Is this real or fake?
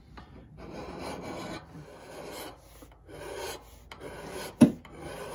real